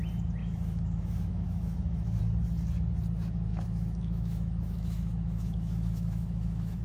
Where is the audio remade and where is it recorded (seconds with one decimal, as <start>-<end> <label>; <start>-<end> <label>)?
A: 0.0-0.4 recorded; 0.4-2.2 remade; 2.2-3.5 recorded; 3.5-6.8 remade